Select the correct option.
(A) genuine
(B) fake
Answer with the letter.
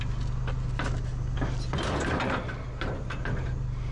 A